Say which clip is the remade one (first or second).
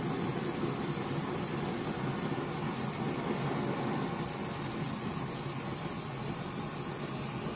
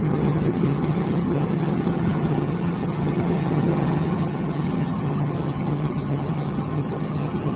second